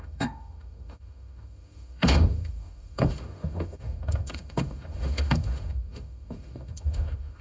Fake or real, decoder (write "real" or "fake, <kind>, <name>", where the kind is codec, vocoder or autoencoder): fake, autoencoder, DAC-VAE